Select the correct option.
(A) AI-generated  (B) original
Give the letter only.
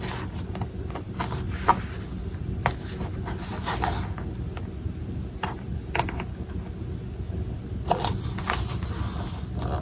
B